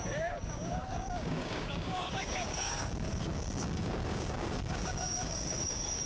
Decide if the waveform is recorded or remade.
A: remade